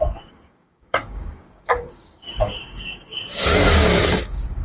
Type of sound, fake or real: fake